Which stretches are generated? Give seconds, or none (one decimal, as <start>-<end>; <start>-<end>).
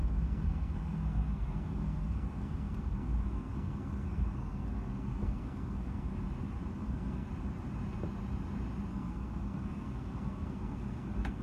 0.0-6.1; 6.8-7.3; 8.9-11.4